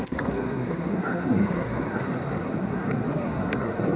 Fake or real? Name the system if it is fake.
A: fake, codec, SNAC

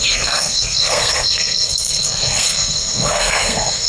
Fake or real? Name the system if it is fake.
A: fake, codec, SNAC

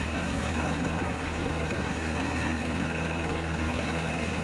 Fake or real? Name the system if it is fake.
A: fake, codec, SNAC